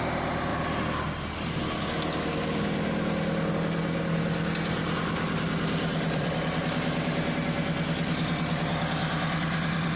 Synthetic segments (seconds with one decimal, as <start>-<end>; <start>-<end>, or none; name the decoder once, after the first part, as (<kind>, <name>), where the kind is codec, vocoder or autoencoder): 5.9-6.6 (vocoder, BigVGAN v2)